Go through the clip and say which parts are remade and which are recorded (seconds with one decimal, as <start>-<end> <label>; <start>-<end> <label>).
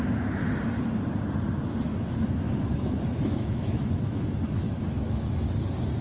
0.0-1.9 recorded; 1.9-5.5 remade; 5.5-6.0 recorded